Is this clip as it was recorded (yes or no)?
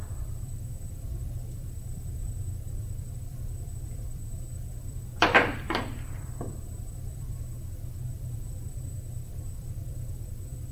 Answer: no